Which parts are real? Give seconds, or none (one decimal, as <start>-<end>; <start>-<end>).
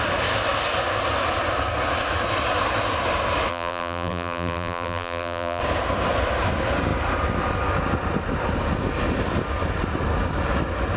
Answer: 0.0-3.5; 5.6-11.0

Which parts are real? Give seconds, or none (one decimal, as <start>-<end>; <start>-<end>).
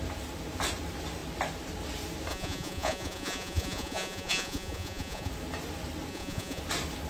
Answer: 0.0-2.3; 5.3-6.1; 6.6-7.1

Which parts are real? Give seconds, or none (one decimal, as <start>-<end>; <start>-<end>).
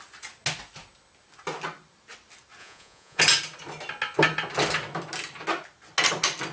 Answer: 0.0-2.6; 3.2-6.5